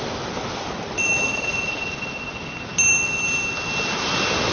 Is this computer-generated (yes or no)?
no